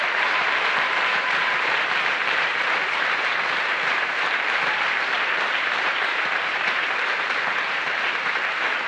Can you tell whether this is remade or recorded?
remade